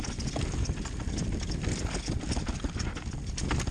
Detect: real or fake real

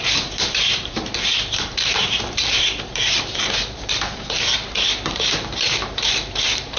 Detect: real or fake fake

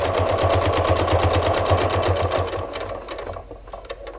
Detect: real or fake real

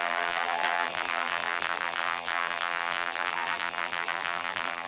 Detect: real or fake fake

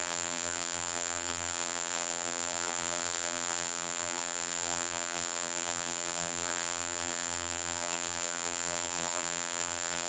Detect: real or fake fake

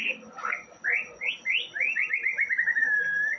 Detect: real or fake real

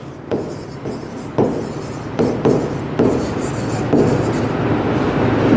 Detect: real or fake real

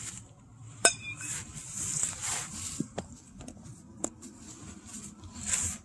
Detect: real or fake fake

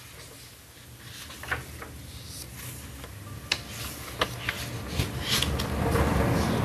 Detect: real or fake real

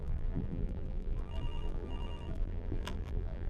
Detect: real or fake fake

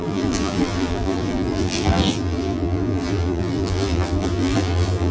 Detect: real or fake fake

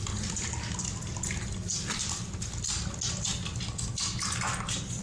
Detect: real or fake real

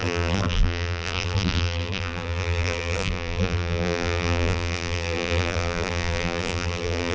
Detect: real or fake fake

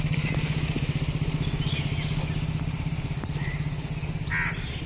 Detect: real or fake real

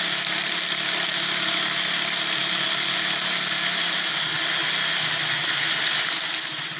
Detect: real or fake real